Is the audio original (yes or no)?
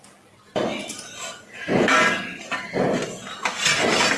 yes